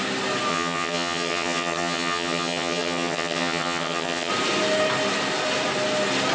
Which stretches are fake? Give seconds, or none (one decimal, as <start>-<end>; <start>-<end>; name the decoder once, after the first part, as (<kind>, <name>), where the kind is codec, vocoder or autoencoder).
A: 0.5-4.3 (vocoder, HiFi-GAN)